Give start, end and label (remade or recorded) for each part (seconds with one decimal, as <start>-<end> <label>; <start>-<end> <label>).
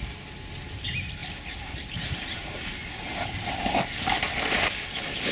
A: 0.0-1.2 recorded; 1.2-2.7 remade; 2.7-5.3 recorded